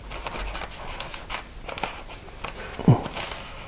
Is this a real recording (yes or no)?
yes